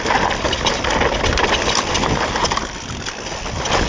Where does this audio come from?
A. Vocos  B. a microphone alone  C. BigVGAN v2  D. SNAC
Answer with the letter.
B